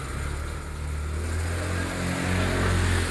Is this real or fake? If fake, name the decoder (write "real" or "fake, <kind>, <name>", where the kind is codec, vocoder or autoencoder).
real